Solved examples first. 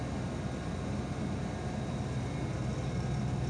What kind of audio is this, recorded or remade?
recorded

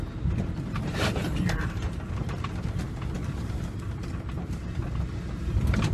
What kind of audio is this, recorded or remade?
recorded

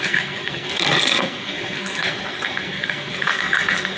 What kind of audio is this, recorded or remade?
remade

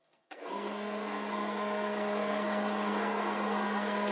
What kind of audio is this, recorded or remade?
remade